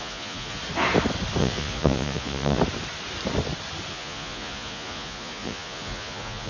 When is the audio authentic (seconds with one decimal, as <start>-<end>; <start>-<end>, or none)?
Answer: 0.6-1.4; 2.6-3.9